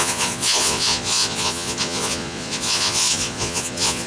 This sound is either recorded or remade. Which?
remade